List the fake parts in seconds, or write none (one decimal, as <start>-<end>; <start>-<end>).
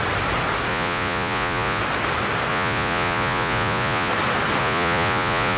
0.7-1.8; 2.5-4.1; 4.6-5.6